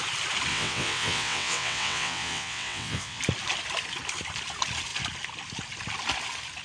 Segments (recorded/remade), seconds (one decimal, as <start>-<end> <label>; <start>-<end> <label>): 0.0-0.5 recorded; 0.5-3.2 remade; 3.2-6.6 recorded